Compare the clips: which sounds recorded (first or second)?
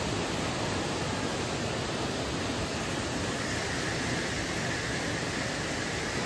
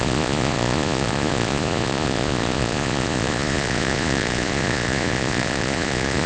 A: first